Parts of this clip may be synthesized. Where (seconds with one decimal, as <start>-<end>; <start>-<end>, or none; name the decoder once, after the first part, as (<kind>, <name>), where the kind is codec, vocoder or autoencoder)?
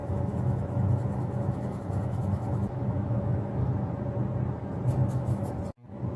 0.0-3.7 (autoencoder, DAC-VAE); 5.0-5.5